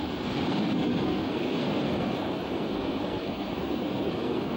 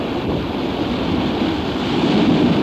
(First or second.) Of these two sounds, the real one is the second